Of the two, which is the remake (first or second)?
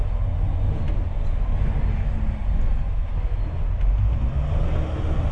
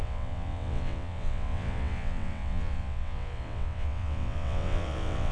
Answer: second